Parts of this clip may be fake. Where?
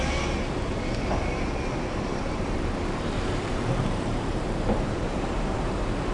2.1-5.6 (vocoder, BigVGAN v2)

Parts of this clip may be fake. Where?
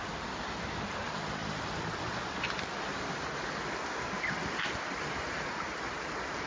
1.4-5.3 (vocoder, BigVGAN v2)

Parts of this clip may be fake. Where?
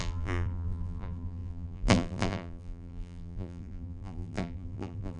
0.0-5.2 (vocoder, BigVGAN v2)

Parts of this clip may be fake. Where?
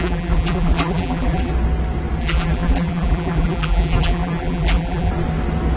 0.0-1.5 (vocoder, BigVGAN v2); 2.2-5.1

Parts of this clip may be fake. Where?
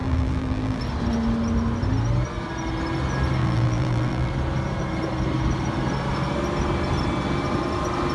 0.0-0.8 (vocoder, BigVGAN v2); 3.4-4.3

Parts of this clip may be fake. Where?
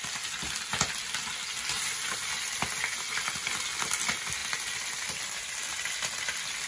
none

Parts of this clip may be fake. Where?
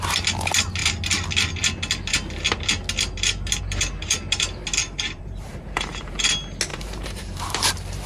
4.8-6.1 (vocoder, BigVGAN v2); 6.7-8.1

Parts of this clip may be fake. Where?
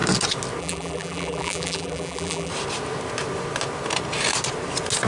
0.6-2.5 (vocoder, BigVGAN v2)